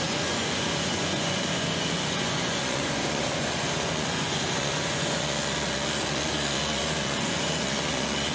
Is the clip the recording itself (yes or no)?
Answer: no